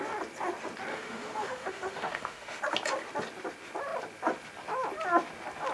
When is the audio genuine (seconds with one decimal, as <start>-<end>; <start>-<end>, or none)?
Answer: 0.0-0.9; 2.6-5.7